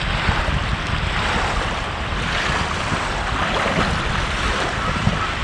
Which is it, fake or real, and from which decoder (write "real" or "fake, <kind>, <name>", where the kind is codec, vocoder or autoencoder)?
real